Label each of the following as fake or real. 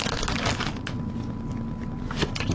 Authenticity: real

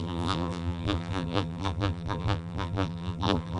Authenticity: fake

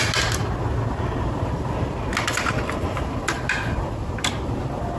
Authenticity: real